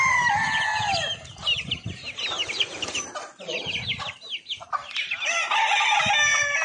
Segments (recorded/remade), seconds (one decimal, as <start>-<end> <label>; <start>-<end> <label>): 0.0-1.4 recorded; 1.4-4.1 remade; 4.1-4.8 recorded; 4.8-6.1 remade; 6.1-6.6 recorded